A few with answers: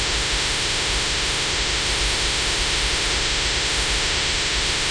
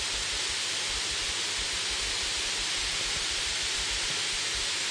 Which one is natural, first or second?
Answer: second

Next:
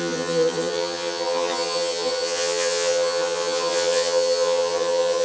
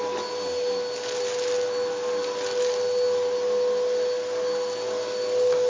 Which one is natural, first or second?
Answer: second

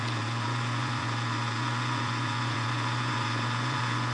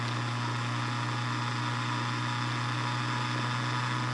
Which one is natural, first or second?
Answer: second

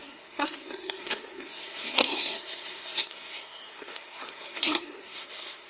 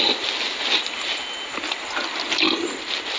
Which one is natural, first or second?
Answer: second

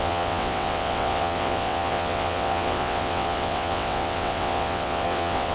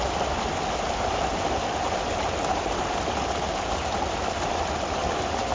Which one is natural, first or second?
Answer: second